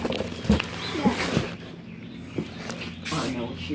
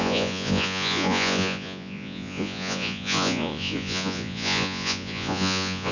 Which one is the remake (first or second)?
second